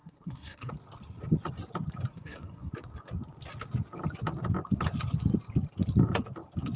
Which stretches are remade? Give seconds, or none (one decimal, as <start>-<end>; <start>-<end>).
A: 0.0-0.7; 2.1-2.7